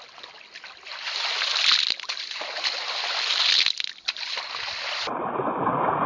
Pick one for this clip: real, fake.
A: real